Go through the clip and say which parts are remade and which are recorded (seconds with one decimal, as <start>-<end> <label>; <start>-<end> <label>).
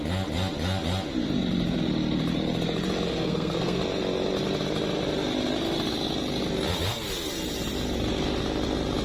0.0-3.1 recorded; 3.1-3.8 remade; 3.8-9.0 recorded